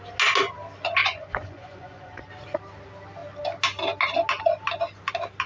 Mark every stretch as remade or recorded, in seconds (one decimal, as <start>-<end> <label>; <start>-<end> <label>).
0.0-1.0 recorded; 1.0-2.3 remade; 2.3-5.5 recorded